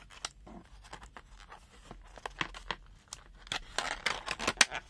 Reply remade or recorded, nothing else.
recorded